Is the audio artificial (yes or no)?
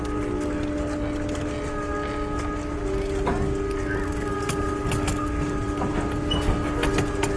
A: no